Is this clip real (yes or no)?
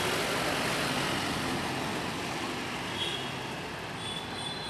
yes